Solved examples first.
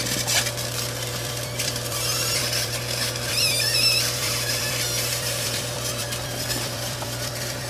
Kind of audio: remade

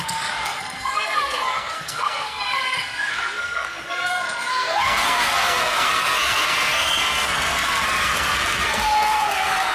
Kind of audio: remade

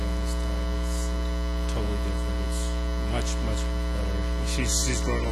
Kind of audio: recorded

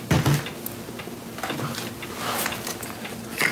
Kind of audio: recorded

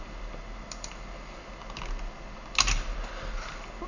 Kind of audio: recorded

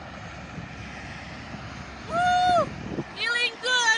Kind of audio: recorded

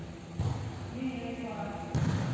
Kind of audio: recorded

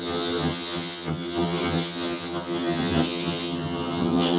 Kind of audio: remade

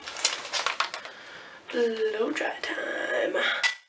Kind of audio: recorded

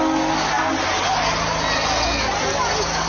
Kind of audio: recorded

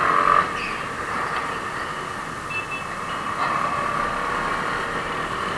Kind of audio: recorded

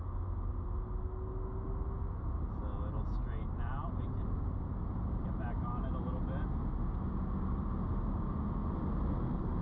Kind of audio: recorded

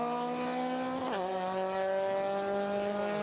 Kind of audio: recorded